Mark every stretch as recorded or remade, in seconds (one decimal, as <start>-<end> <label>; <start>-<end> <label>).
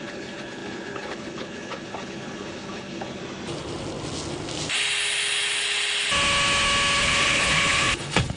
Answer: 0.0-3.2 remade; 3.2-7.0 recorded; 7.0-8.4 remade